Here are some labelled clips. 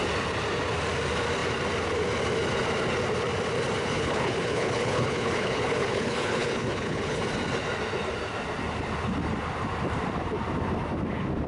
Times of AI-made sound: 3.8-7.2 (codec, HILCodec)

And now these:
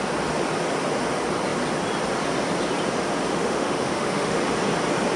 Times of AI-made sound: 3.3-4.4 (autoencoder, DAC-VAE)